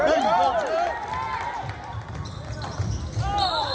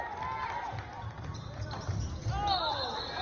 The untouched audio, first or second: second